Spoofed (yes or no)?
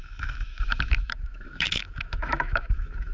yes